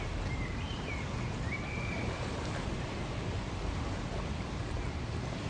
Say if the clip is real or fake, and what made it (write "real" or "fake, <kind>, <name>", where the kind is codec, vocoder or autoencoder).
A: fake, vocoder, BigVGAN v2